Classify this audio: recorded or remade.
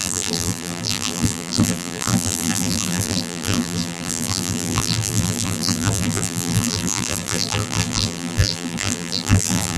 remade